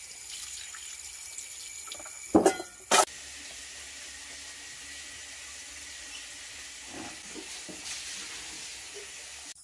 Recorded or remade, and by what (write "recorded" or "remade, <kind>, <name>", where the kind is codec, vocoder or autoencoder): recorded